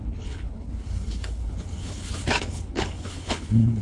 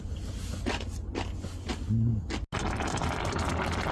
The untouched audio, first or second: second